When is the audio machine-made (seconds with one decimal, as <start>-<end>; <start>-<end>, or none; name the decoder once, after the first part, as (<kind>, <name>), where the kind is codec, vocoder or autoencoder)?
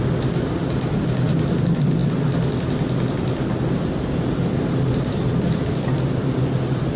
none